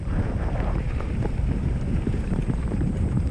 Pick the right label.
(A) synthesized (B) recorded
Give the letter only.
A